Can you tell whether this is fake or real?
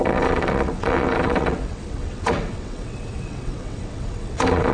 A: fake